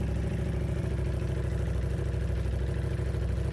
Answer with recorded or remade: recorded